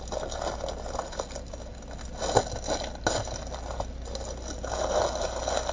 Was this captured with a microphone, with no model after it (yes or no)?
yes